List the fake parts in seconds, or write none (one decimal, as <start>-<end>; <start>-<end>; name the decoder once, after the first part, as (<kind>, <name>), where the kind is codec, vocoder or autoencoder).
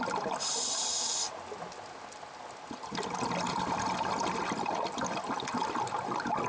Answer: none